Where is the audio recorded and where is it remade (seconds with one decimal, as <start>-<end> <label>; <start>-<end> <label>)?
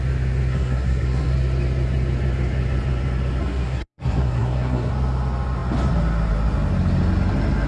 0.0-0.5 recorded; 0.5-1.3 remade; 1.3-3.4 recorded; 3.4-4.9 remade; 4.9-7.7 recorded